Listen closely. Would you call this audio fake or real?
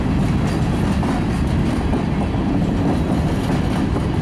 real